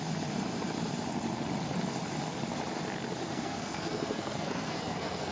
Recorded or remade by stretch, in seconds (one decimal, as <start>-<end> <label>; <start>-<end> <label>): 0.0-3.2 recorded; 3.2-5.3 remade